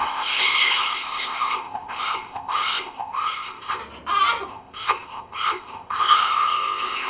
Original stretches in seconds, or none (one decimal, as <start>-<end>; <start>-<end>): 3.8-4.5